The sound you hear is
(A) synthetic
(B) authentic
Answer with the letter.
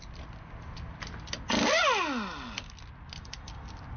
B